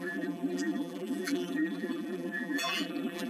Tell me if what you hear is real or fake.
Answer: fake